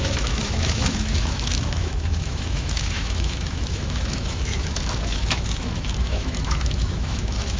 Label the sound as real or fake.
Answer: fake